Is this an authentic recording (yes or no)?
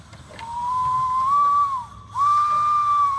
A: yes